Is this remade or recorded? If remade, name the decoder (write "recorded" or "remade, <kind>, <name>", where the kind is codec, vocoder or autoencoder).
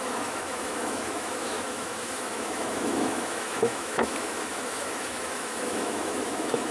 remade, autoencoder, DAC-VAE